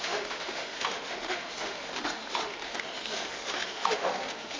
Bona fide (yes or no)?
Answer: no